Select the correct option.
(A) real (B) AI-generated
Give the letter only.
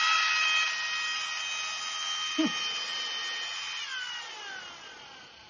A